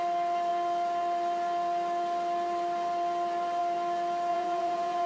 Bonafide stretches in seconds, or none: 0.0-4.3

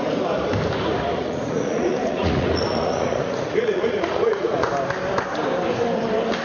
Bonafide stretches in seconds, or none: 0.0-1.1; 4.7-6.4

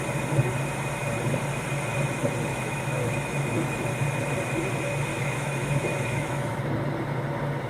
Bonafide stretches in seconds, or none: 0.0-2.5; 3.9-5.1; 6.7-7.7

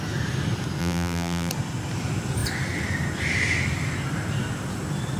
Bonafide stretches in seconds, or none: 0.0-0.8; 1.5-5.2

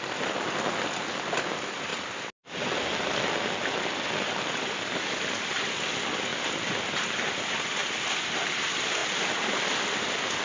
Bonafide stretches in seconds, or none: 0.0-6.3; 6.9-7.8; 8.3-9.0; 9.7-10.4

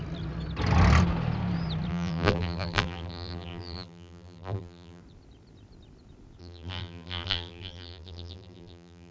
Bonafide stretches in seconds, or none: 0.0-1.9; 5.0-6.4